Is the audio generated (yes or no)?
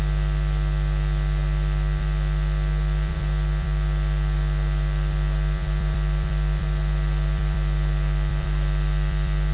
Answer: yes